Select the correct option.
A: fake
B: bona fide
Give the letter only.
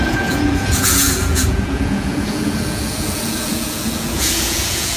A